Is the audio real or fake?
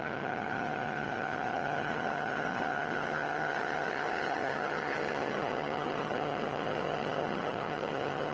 fake